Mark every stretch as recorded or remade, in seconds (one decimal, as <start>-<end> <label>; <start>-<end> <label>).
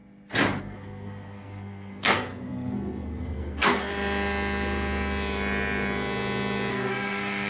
0.0-0.6 recorded; 0.6-3.9 remade; 3.9-6.7 recorded; 6.7-7.5 remade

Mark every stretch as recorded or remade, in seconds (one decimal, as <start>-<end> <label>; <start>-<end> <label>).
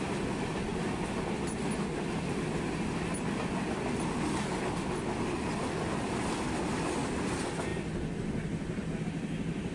0.0-9.7 recorded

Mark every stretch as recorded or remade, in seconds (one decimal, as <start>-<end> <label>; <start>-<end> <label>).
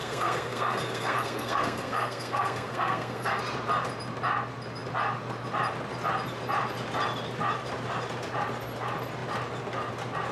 0.0-3.4 remade; 3.4-10.3 recorded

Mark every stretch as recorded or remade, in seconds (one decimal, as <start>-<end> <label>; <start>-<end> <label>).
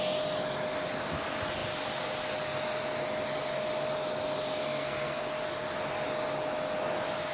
0.0-4.5 recorded; 4.5-5.2 remade; 5.2-7.3 recorded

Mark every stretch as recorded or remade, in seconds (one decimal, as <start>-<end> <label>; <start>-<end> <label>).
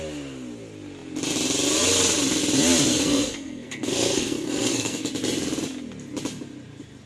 0.0-2.9 recorded; 2.9-5.1 remade; 5.1-7.1 recorded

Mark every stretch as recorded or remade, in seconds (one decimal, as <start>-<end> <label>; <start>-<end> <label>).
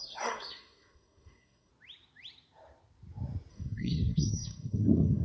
0.0-1.7 remade; 1.7-3.5 recorded; 3.5-5.2 remade